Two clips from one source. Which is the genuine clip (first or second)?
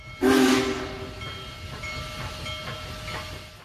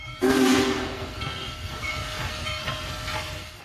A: first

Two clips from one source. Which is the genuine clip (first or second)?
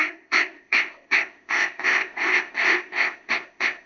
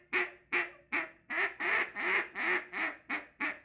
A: second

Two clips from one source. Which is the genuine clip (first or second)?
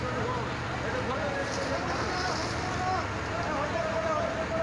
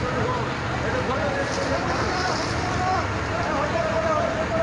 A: first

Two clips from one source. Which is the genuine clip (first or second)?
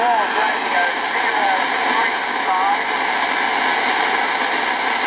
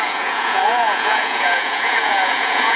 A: first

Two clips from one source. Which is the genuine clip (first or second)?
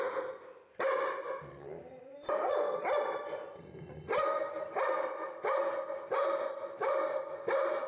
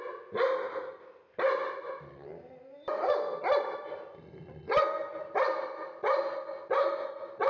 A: second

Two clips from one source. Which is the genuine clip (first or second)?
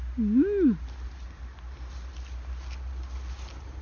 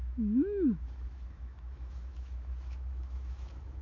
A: first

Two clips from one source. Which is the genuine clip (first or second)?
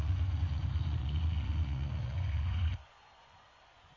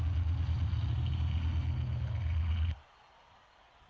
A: second